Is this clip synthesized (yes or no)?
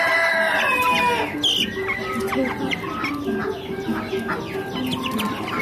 no